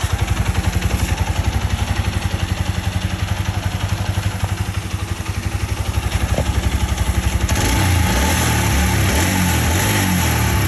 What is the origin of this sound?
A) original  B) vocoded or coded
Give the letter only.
A